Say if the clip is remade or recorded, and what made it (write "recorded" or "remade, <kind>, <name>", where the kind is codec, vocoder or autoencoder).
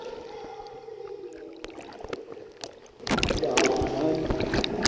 recorded